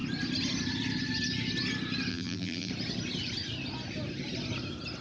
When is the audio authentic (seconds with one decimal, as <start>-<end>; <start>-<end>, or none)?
0.0-2.1; 2.7-5.0